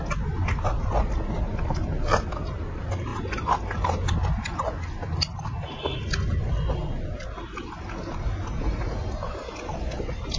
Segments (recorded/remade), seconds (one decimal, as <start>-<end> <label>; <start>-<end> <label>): 0.0-10.4 recorded